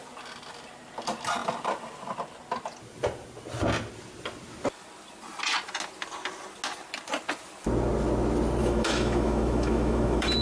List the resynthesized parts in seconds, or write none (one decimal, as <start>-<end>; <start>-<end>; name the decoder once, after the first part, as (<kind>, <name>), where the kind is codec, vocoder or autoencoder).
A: 8.6-10.4 (autoencoder, DAC-VAE)